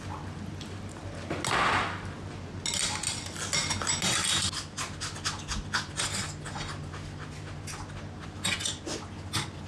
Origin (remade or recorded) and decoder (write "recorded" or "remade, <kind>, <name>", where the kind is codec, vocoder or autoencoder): recorded